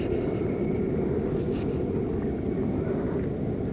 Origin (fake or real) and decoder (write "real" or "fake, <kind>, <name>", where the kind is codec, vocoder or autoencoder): real